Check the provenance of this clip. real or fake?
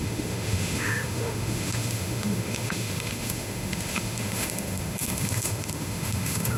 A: fake